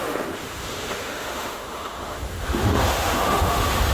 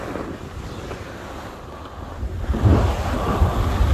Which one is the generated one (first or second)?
first